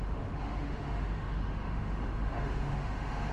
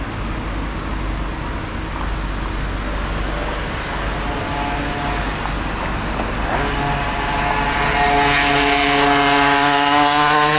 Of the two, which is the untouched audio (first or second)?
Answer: second